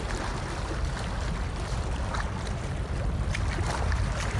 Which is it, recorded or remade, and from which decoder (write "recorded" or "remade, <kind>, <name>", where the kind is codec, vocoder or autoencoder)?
recorded